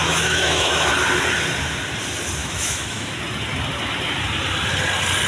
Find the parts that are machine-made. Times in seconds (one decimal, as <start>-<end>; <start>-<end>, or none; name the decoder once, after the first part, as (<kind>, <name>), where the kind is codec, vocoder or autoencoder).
0.0-0.9 (autoencoder, DAC-VAE); 2.4-3.2